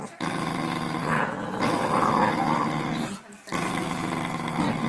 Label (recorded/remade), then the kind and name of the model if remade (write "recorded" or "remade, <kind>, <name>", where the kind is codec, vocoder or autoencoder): recorded